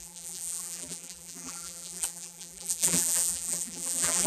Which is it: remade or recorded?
remade